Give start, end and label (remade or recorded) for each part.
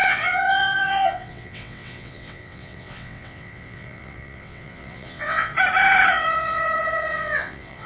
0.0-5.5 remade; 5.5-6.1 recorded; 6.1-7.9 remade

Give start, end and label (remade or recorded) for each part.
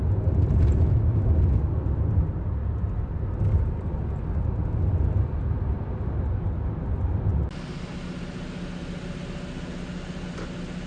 0.0-10.9 recorded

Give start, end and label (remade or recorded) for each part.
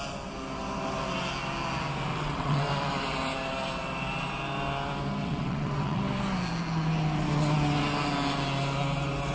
0.0-2.1 recorded; 2.1-2.7 remade; 2.7-5.2 recorded; 5.2-6.0 remade; 6.0-9.3 recorded